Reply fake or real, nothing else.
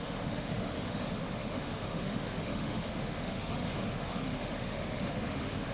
fake